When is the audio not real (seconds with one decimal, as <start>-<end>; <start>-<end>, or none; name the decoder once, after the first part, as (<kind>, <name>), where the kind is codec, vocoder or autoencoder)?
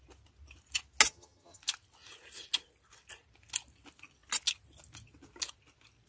1.1-1.6 (vocoder, HiFi-GAN)